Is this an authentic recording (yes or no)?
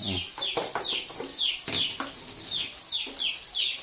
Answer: yes